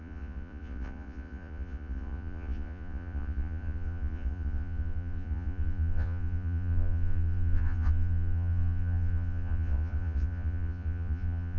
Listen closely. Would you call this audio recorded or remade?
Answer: remade